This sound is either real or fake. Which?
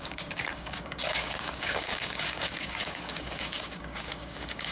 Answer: fake